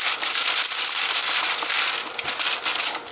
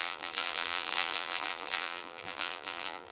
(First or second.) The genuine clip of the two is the first